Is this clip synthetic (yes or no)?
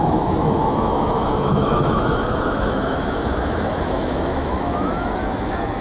yes